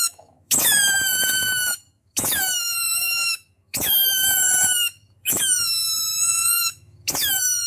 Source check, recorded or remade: remade